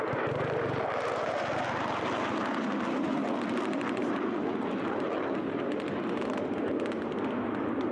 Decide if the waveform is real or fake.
real